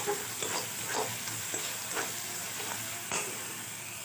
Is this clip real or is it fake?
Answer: real